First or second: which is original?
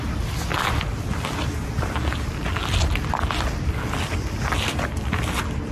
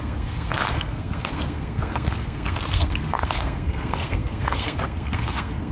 first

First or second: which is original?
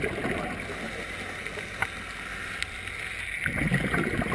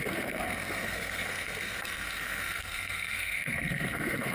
first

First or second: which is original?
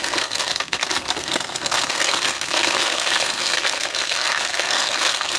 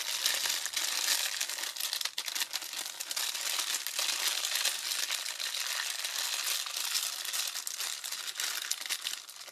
second